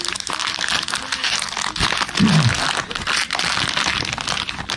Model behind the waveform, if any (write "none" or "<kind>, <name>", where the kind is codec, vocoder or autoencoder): none